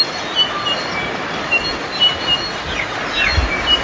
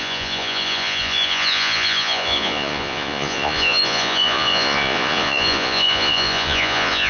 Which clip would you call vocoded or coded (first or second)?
second